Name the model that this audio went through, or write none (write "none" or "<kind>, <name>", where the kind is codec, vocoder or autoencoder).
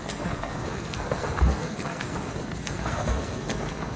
codec, SNAC